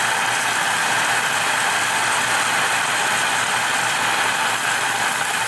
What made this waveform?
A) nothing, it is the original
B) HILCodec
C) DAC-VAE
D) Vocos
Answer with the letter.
A